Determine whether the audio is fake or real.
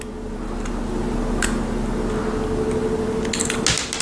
real